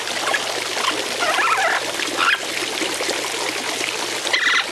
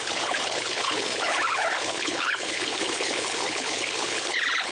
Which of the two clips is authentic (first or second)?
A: first